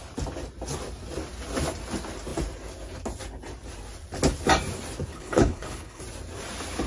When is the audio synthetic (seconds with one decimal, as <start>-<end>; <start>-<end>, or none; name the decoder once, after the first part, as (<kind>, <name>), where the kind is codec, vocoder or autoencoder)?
5.1-6.0 (codec, HILCodec)